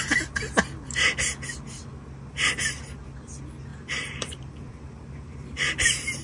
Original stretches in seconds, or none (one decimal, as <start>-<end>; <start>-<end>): 0.0-3.7